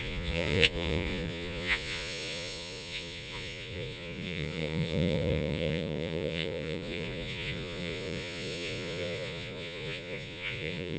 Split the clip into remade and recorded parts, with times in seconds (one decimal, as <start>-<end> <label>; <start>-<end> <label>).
0.0-11.0 remade

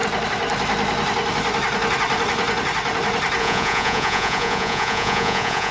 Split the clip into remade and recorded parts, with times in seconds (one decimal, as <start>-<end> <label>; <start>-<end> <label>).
0.0-3.4 recorded; 3.4-5.7 remade

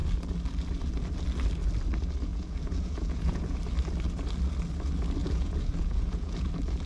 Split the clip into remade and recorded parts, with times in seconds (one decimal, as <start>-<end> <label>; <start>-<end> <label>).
0.0-2.3 recorded; 2.3-3.6 remade; 3.6-5.2 recorded; 5.2-6.5 remade; 6.5-6.9 recorded